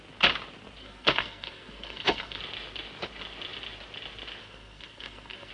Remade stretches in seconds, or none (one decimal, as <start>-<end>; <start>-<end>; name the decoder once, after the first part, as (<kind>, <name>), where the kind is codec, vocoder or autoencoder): 0.8-2.4 (codec, SNAC); 4.4-5.5